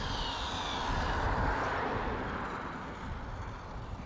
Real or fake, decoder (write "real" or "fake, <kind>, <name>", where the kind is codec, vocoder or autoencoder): real